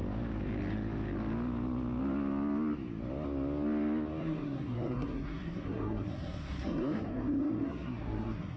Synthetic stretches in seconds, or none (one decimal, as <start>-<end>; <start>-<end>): 4.2-8.6